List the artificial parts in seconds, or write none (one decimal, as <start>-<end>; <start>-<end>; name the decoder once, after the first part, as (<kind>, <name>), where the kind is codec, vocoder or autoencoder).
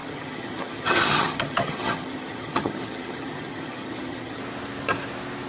0.0-4.4 (vocoder, HiFi-GAN)